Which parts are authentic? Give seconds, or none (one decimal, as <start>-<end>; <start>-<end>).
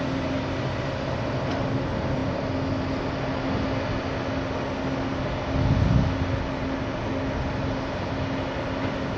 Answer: 0.0-9.2